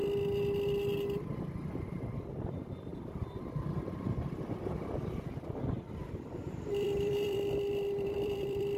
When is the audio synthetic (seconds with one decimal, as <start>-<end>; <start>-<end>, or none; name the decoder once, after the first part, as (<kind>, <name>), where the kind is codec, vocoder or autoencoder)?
2.9-3.8 (vocoder, BigVGAN v2); 6.0-8.8